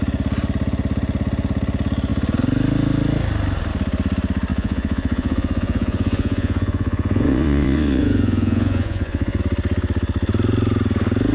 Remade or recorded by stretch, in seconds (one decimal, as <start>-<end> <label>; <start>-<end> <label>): 0.0-4.5 recorded; 4.5-9.4 remade; 9.4-11.3 recorded